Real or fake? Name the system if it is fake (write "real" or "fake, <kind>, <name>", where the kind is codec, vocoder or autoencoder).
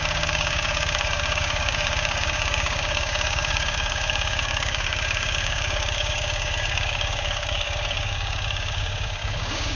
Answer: fake, codec, DAC